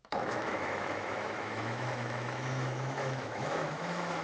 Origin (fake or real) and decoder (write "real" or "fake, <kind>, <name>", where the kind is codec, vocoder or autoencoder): fake, autoencoder, DAC-VAE